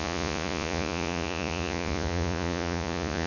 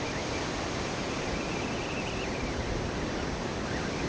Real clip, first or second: second